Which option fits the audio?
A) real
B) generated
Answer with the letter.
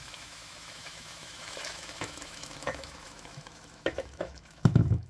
B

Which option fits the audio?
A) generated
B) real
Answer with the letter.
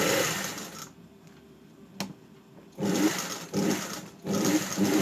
B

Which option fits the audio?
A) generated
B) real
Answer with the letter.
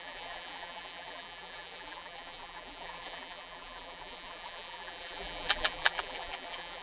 A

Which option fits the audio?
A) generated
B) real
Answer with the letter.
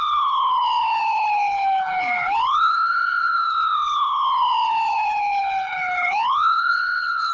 A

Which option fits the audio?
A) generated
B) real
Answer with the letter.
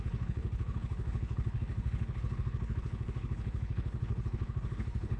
A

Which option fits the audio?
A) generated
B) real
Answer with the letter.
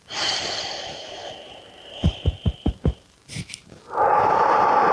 A